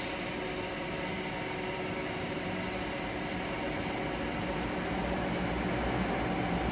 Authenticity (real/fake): real